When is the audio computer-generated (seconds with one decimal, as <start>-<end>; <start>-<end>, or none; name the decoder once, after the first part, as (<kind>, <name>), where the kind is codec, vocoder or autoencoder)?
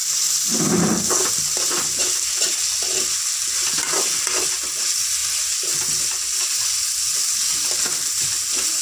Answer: none